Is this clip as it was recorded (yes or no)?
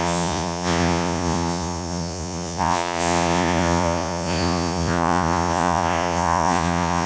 no